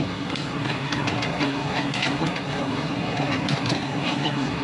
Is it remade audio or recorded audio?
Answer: remade